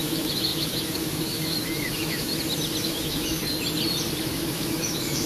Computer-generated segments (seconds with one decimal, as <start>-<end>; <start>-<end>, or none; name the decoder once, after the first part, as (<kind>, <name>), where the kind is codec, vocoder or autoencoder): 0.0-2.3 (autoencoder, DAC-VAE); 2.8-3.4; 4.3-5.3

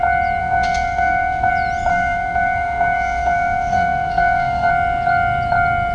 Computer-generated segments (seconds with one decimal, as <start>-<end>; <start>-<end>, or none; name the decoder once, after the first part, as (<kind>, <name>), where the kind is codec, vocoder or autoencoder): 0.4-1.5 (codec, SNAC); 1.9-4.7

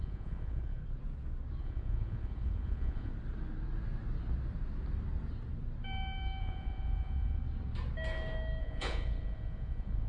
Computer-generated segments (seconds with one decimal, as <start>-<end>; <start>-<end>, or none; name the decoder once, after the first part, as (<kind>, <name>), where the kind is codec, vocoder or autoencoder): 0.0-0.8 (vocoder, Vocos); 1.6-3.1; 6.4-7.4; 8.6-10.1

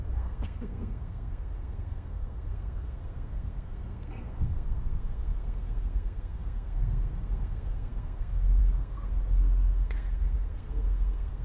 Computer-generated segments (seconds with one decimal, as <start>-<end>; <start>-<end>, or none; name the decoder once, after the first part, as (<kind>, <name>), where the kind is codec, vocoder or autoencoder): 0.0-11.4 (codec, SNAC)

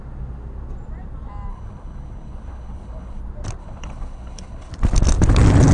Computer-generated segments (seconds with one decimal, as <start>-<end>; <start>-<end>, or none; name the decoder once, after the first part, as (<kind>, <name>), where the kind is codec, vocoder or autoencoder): 1.5-3.2 (codec, HILCodec); 3.6-4.7

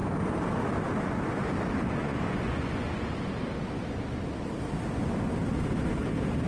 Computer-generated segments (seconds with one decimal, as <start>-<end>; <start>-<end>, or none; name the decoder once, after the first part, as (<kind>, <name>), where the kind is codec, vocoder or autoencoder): 2.0-3.3 (vocoder, Vocos)

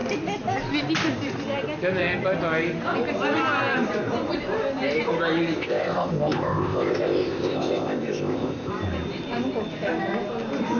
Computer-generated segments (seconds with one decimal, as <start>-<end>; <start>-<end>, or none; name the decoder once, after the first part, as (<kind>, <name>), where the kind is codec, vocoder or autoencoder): 5.6-8.7 (codec, ZipCodec)